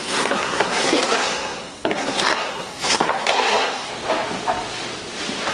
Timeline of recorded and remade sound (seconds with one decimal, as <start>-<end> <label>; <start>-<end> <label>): 0.0-3.9 remade; 3.9-5.5 recorded